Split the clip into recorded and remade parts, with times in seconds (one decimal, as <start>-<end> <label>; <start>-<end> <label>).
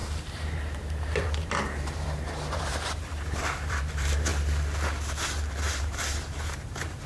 0.0-4.3 remade; 4.3-5.8 recorded; 5.8-7.1 remade